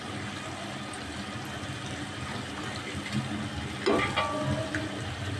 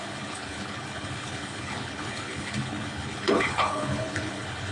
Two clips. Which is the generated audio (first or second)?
second